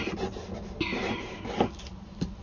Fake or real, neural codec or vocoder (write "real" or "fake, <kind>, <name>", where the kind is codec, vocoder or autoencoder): real